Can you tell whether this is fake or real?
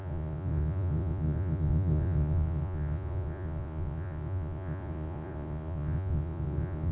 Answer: fake